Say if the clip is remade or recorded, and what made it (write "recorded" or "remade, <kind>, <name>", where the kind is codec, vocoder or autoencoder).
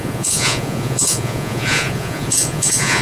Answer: remade, vocoder, Vocos